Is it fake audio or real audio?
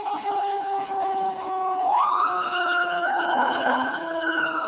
fake